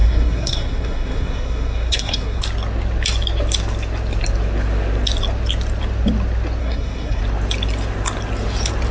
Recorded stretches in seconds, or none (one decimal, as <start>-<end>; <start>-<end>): 2.4-6.6; 7.2-8.9